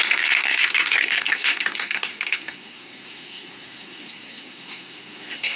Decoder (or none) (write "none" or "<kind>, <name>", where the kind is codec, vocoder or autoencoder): codec, SNAC